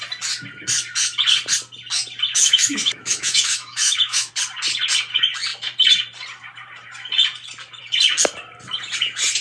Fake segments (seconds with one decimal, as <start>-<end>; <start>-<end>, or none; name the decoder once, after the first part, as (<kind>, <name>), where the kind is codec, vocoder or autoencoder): 2.3-4.3 (autoencoder, DAC-VAE)